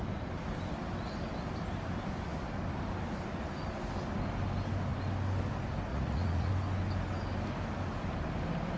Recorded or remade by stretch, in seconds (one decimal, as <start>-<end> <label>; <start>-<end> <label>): 0.0-5.9 recorded; 5.9-6.5 remade; 6.5-8.8 recorded